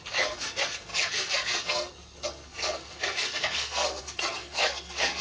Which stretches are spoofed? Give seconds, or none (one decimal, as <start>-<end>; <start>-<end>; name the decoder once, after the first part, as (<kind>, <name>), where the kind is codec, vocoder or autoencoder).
0.0-5.2 (codec, SNAC)